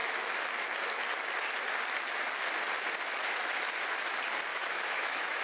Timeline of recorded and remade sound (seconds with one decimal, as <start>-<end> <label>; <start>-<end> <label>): 0.0-4.5 recorded; 4.5-5.4 remade